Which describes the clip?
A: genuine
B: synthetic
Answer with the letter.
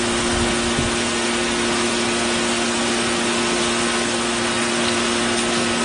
A